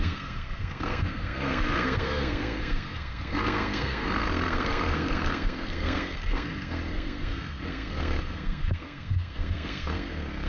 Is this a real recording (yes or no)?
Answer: no